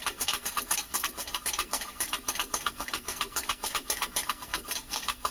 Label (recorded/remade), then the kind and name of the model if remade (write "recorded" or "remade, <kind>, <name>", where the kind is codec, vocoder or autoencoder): remade, codec, SNAC